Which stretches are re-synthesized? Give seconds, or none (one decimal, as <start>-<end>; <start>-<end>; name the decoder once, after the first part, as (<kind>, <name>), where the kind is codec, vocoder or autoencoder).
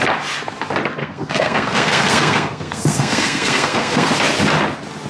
1.0-4.1 (codec, SNAC)